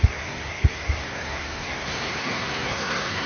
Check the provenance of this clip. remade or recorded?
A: remade